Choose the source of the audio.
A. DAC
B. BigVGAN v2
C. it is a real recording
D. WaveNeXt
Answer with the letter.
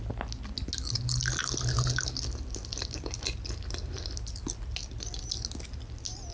C